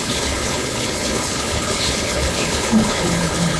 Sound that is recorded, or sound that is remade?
remade